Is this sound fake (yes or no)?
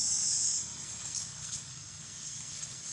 yes